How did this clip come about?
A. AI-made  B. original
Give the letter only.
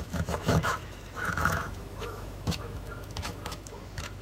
A